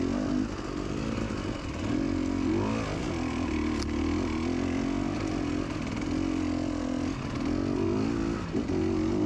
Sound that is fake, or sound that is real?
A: real